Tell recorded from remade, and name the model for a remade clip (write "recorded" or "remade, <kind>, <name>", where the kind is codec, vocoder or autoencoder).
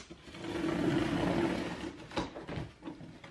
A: recorded